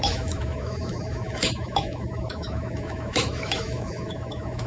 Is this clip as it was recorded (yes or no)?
no